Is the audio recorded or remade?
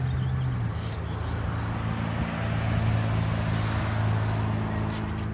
recorded